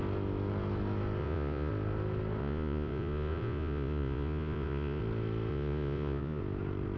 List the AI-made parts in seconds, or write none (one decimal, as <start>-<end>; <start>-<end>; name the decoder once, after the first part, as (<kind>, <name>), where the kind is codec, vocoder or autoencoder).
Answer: 1.2-1.7 (vocoder, Vocos); 2.4-5.0; 5.5-6.4